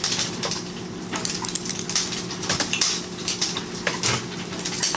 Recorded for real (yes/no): yes